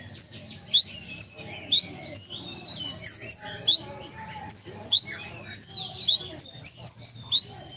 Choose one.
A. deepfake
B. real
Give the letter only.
B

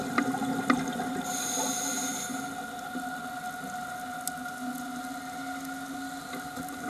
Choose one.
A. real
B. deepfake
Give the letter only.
A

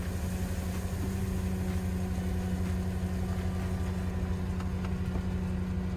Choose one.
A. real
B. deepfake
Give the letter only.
A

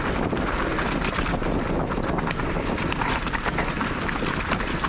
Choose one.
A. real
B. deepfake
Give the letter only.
A